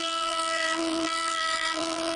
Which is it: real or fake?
fake